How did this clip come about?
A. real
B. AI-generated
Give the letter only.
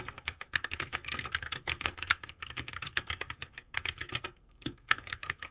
B